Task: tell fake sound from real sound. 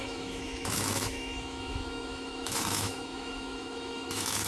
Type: fake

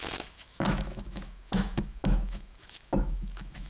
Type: fake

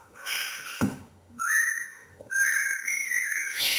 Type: fake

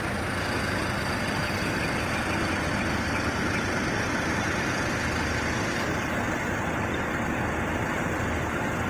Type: real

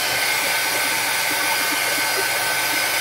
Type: real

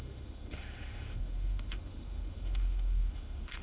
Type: fake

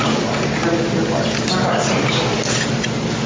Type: real